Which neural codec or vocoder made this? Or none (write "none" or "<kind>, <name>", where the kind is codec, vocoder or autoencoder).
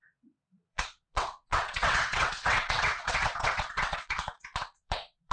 vocoder, WaveNeXt